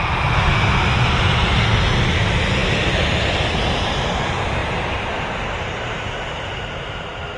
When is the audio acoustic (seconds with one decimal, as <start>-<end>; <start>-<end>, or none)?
0.0-4.6; 6.9-7.4